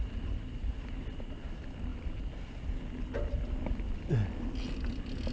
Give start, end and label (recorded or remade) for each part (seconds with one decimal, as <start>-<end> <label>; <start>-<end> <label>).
0.0-5.3 recorded